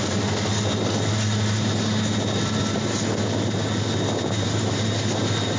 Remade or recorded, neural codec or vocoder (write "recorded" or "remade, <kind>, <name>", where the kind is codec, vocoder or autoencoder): recorded